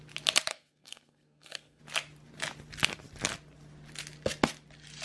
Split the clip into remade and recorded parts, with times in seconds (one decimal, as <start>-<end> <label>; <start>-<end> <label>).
0.0-0.5 recorded; 0.5-1.8 remade; 1.8-5.0 recorded